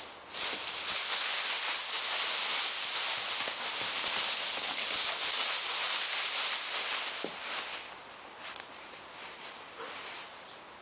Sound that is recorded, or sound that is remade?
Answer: recorded